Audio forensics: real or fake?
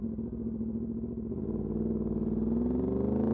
real